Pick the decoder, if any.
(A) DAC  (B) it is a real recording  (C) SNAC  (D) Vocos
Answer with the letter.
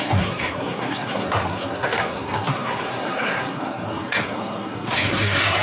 C